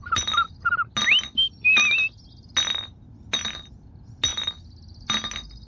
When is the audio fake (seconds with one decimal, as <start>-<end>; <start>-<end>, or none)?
none